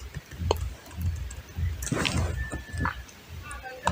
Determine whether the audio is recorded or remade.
recorded